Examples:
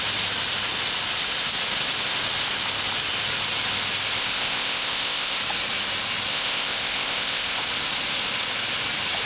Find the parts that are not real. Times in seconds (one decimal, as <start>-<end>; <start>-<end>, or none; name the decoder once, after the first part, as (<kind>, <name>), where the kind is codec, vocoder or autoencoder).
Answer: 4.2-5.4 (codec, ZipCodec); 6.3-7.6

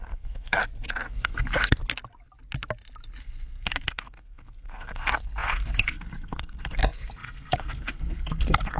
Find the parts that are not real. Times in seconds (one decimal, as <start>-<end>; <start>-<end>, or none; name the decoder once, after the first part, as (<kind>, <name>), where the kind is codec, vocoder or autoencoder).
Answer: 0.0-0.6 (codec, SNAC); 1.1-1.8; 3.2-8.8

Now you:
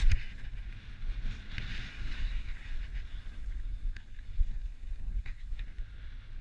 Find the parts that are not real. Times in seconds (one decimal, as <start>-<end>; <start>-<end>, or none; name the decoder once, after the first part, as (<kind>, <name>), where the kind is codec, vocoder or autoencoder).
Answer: 1.9-2.7 (codec, SNAC); 3.1-5.6

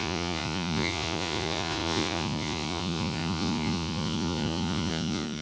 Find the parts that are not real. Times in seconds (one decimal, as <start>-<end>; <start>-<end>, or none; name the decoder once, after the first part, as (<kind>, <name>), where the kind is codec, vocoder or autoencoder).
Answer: 0.0-5.4 (vocoder, Vocos)